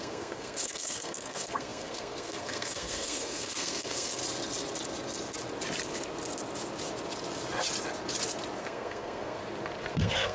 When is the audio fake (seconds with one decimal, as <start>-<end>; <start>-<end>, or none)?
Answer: 0.0-4.2; 8.6-9.4; 9.9-10.3